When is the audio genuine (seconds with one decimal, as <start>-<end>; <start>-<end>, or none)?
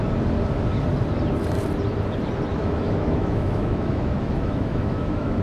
0.0-2.5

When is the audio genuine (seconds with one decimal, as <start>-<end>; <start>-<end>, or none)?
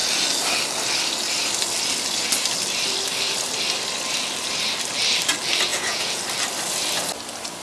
0.0-5.7; 6.2-7.6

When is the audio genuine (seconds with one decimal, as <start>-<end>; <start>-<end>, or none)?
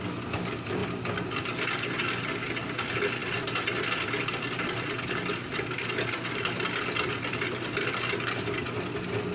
0.0-9.3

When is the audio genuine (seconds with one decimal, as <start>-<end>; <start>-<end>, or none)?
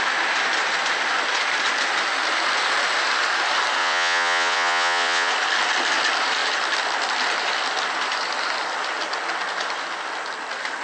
0.0-3.8; 5.3-10.8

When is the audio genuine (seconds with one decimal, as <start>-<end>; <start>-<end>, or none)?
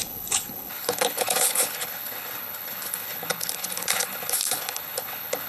none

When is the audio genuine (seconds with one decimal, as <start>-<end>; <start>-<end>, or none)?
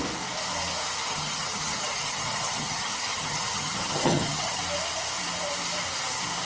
0.0-1.1; 4.6-6.4